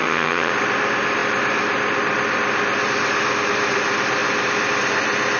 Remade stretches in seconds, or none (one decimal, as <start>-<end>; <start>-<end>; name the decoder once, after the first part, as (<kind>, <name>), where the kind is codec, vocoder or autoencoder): 0.0-0.5 (vocoder, HiFi-GAN)